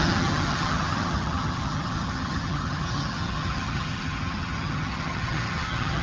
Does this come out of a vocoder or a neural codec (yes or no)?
yes